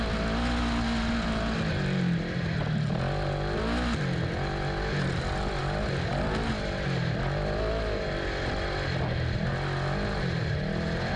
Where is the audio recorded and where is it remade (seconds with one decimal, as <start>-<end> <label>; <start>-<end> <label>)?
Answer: 0.0-11.2 recorded